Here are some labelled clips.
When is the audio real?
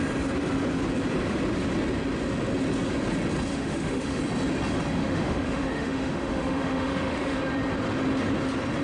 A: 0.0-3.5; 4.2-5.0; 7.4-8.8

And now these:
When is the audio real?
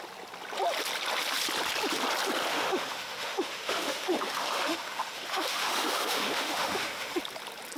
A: 0.0-2.5; 7.2-7.8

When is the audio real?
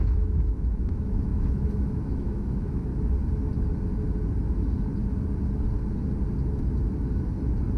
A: 2.9-7.8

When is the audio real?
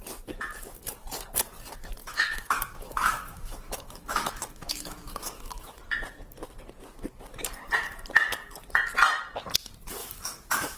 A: 0.0-2.0; 5.8-10.0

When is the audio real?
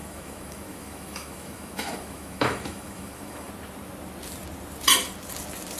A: 3.5-5.8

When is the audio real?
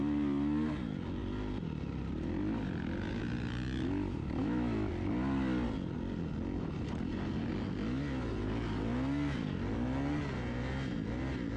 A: 0.0-4.4; 4.9-11.6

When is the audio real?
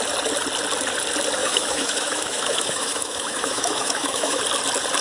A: 0.0-1.4; 4.4-5.0